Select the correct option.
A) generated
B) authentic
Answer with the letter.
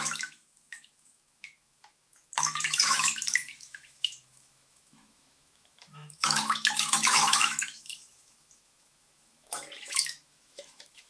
A